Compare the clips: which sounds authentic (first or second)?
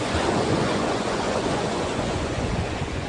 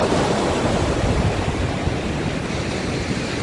second